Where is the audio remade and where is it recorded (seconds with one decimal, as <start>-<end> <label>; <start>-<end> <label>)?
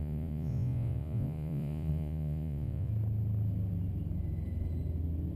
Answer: 0.0-2.9 remade; 2.9-5.4 recorded